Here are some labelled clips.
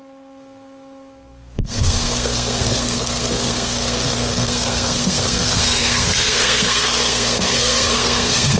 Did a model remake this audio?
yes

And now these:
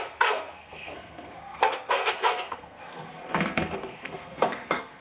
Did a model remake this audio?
yes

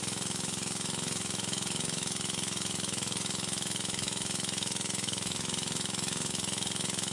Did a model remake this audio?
yes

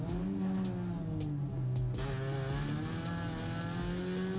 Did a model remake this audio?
no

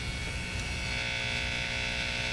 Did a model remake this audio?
no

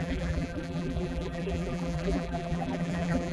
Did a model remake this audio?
yes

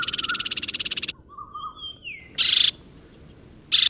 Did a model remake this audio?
no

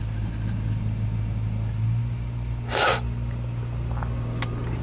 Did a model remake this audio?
no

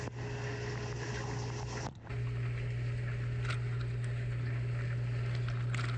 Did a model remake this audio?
no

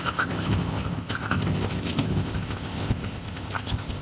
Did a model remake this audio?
yes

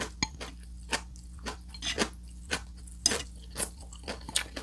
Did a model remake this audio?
no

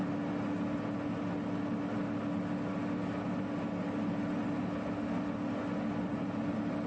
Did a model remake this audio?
no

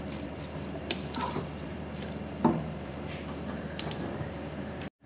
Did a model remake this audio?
yes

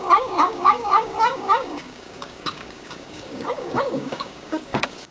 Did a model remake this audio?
yes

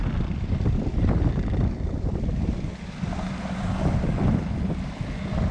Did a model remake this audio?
no